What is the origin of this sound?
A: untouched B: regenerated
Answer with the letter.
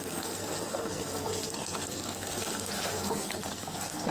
B